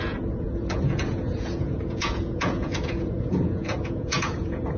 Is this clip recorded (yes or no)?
no